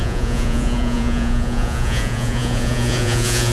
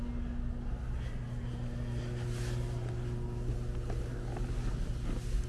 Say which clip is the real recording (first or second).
second